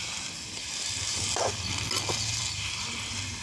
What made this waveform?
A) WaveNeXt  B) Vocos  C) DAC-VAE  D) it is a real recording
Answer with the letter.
D